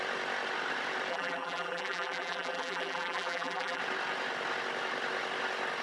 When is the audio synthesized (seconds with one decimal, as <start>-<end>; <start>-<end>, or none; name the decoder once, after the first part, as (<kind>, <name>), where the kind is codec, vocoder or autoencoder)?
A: 1.1-3.8 (vocoder, BigVGAN v2)